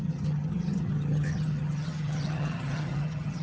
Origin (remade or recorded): remade